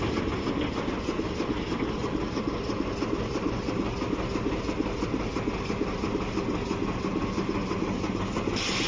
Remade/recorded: recorded